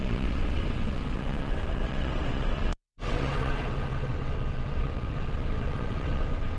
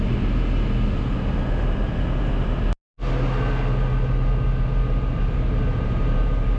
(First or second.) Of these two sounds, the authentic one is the second